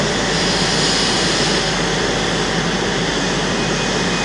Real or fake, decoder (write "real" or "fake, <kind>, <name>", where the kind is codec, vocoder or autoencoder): real